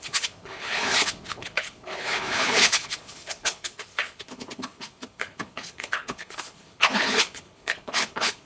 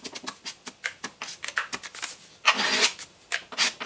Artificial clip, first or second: first